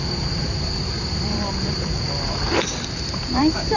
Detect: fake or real fake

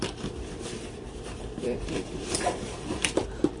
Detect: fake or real fake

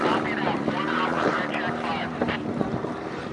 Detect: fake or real fake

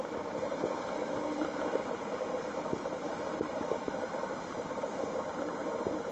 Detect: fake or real real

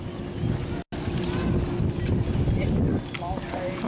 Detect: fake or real real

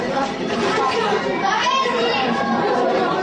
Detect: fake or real fake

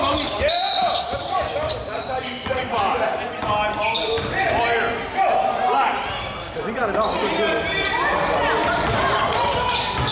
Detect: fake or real real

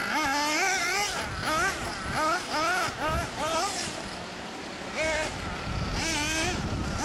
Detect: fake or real real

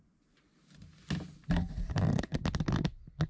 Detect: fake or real real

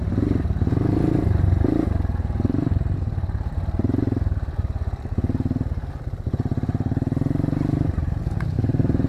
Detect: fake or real fake